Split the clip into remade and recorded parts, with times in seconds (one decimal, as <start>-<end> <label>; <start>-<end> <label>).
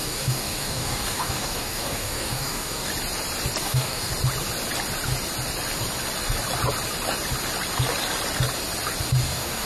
0.0-2.9 remade; 2.9-3.6 recorded; 3.6-4.1 remade; 4.1-9.2 recorded; 9.2-9.7 remade